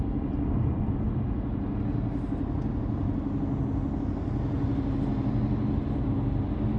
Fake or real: real